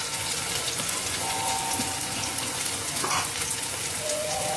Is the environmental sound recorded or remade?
remade